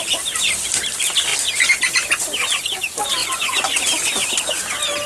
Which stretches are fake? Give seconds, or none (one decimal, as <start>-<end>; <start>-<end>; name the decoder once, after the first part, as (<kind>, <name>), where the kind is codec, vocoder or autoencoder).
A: 3.2-3.8 (vocoder, Vocos)